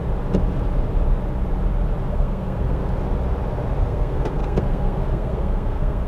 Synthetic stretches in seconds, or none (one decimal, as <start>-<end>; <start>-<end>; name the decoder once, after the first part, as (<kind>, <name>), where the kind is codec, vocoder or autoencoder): 2.1-2.8 (codec, SNAC); 3.8-6.1